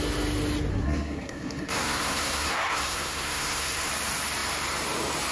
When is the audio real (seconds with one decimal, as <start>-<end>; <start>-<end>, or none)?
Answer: 0.0-0.7; 3.9-5.3